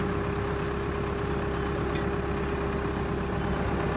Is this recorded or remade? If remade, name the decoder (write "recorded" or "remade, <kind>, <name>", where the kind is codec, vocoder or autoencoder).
recorded